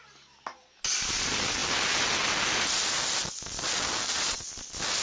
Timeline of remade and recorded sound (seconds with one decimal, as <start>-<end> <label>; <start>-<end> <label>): 0.0-5.0 recorded